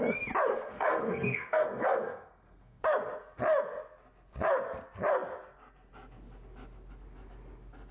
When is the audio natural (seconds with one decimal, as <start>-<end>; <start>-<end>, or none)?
0.0-0.5; 2.8-7.9